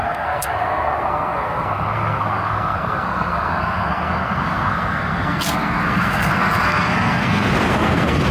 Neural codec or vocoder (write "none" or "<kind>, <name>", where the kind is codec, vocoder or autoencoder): codec, SNAC